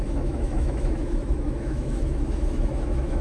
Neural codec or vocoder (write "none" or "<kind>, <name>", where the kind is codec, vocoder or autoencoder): autoencoder, DAC-VAE